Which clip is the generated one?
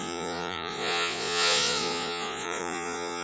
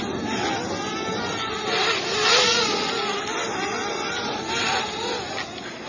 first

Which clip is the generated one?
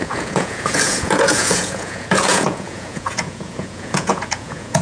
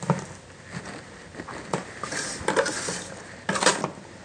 first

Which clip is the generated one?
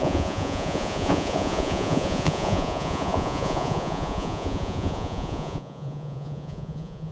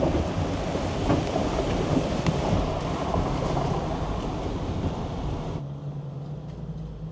first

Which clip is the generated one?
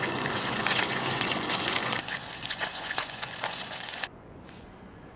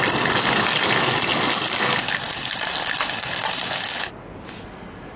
first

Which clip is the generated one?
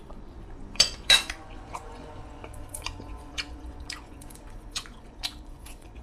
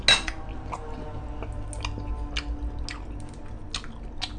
first